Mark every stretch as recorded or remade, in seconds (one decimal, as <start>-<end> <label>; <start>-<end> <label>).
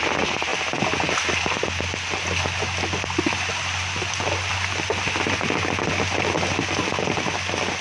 0.0-7.8 recorded